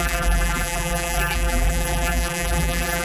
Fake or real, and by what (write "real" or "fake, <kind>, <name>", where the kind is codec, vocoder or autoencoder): fake, vocoder, BigVGAN v2